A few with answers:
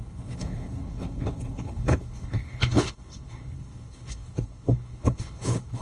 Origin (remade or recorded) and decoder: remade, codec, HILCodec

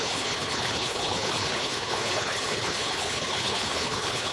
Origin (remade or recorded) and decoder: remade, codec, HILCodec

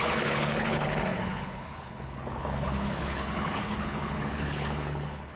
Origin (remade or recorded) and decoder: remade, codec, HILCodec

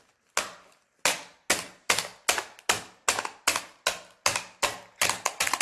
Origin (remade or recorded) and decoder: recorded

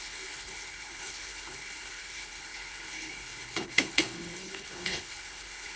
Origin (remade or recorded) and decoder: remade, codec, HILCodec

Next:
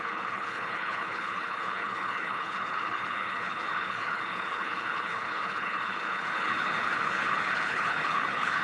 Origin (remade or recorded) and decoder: remade, codec, HILCodec